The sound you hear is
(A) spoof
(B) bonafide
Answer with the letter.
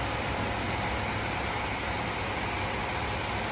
B